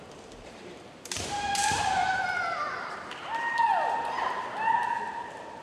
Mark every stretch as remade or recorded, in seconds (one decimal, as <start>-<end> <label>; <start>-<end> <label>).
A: 0.0-5.6 remade